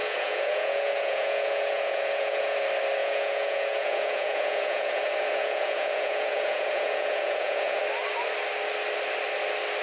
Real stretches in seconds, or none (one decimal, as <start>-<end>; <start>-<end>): 2.6-3.0; 7.8-9.8